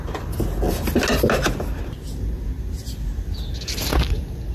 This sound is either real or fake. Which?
real